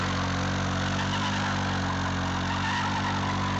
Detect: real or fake real